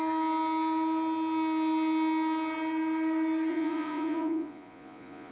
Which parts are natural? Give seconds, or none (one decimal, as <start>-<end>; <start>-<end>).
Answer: 0.0-3.5